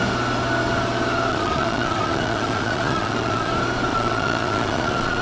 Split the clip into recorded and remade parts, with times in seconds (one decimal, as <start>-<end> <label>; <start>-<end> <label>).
0.0-1.3 recorded; 1.3-3.5 remade; 3.5-3.9 recorded; 3.9-5.2 remade